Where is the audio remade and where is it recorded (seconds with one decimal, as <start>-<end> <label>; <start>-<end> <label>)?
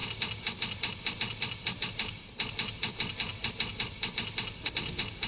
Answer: 0.0-5.3 recorded